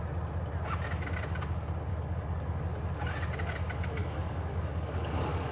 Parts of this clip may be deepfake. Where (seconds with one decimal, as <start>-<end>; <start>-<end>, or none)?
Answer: 1.9-2.6; 4.0-5.5